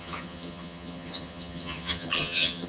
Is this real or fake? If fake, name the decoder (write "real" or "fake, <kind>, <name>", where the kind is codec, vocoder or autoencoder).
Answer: fake, vocoder, HiFi-GAN